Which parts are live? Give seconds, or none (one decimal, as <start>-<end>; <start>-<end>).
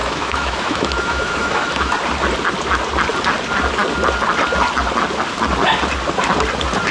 1.9-6.9